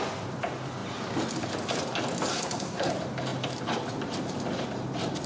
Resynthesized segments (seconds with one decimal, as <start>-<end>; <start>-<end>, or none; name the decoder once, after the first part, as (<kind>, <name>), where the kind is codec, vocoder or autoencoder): 2.3-2.9 (codec, SNAC)